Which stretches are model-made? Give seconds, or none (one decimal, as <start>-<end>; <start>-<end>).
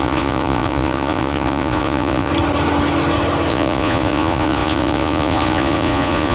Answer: 0.0-2.3; 3.5-6.3